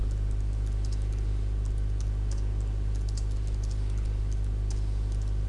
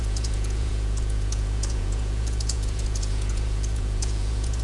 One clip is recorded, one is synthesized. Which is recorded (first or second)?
first